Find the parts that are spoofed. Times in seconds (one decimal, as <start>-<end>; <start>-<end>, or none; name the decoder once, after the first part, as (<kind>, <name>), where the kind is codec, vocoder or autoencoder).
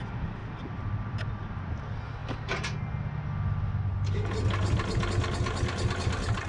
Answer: none